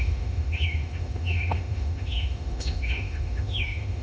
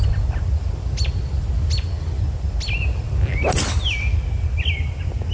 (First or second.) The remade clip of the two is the first